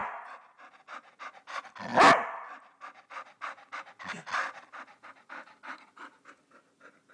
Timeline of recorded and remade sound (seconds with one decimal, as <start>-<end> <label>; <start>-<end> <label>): 0.0-7.1 recorded